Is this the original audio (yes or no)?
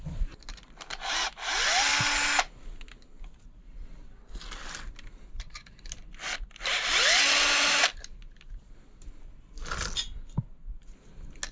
yes